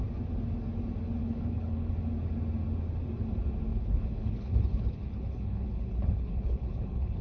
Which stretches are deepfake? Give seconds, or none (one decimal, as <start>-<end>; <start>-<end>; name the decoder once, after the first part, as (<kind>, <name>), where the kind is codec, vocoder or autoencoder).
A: 1.2-1.9 (codec, HILCodec); 3.7-7.2